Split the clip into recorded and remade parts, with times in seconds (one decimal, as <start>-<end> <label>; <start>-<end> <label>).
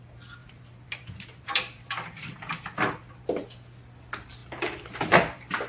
0.0-0.4 recorded; 0.4-3.8 remade; 3.8-4.4 recorded; 4.4-5.7 remade